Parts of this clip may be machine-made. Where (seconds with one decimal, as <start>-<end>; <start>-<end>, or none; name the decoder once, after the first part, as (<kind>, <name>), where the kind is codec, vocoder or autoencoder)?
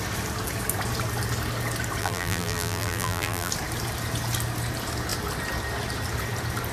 2.0-3.5 (vocoder, BigVGAN v2)